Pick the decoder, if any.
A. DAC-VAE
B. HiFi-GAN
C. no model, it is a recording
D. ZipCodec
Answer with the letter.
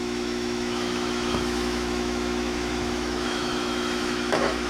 A